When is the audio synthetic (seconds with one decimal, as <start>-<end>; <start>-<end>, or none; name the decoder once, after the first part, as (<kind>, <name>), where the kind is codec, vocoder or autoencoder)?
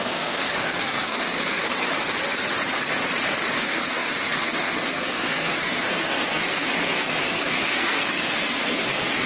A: 0.0-1.6 (codec, SNAC); 3.6-9.3